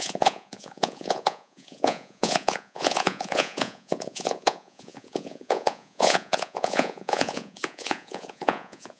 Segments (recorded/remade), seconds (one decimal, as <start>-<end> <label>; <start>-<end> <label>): 0.0-9.0 remade